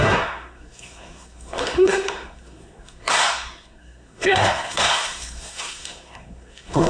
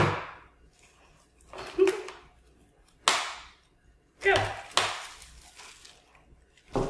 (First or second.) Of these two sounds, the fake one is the first